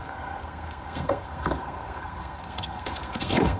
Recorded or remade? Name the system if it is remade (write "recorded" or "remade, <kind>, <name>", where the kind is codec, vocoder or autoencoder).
remade, codec, SNAC